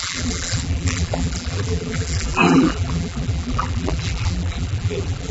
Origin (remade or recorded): remade